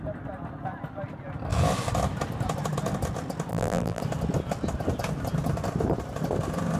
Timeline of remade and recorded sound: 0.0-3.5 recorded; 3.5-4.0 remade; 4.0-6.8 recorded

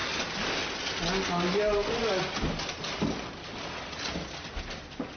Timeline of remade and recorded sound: 0.0-5.2 recorded

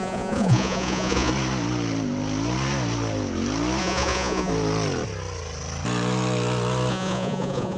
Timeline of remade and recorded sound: 0.0-1.3 remade; 1.3-3.8 recorded; 3.8-4.5 remade; 4.5-6.9 recorded; 6.9-7.8 remade

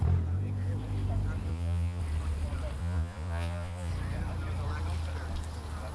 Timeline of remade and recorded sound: 0.0-1.5 recorded; 1.5-2.0 remade; 2.0-2.8 recorded; 2.8-3.9 remade; 3.9-5.9 recorded

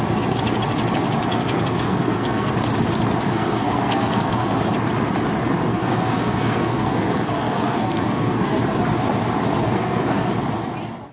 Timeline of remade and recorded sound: 0.0-1.3 recorded; 1.3-2.5 remade; 2.5-3.3 recorded; 3.3-4.6 remade; 4.6-5.7 recorded; 5.7-8.6 remade; 8.6-9.6 recorded; 9.6-10.3 remade; 10.3-11.1 recorded

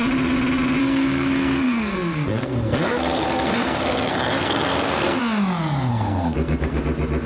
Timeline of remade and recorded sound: 0.0-0.8 recorded; 0.8-5.2 remade; 5.2-5.9 recorded; 5.9-6.8 remade; 6.8-7.3 recorded

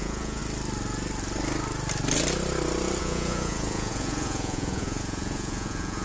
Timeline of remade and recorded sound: 0.0-0.4 remade; 0.4-3.0 recorded; 3.0-6.0 remade